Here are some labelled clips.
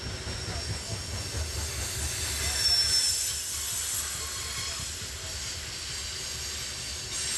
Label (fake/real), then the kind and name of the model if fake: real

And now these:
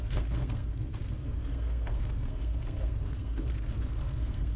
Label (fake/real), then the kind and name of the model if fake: fake, codec, SNAC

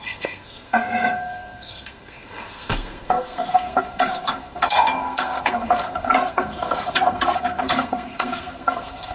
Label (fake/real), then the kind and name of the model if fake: fake, codec, SNAC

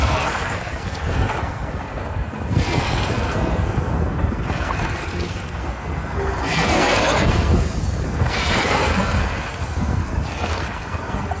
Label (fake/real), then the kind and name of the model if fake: fake, codec, SNAC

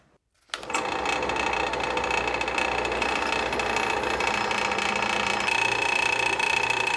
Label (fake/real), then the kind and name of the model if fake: real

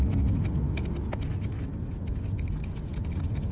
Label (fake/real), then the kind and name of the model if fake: real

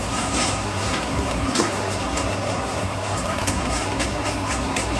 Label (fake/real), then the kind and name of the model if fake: fake, codec, SNAC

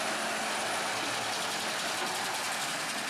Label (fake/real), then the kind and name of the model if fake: real